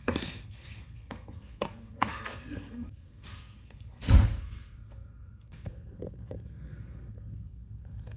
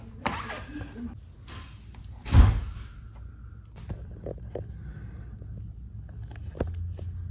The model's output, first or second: first